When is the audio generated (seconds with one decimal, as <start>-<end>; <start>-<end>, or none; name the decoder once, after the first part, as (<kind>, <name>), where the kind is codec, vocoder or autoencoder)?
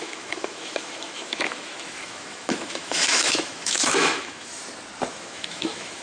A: 0.0-4.6 (autoencoder, DAC-VAE); 5.1-6.0